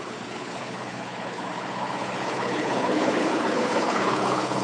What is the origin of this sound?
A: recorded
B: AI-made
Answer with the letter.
B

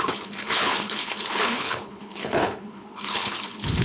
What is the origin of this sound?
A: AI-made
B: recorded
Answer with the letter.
A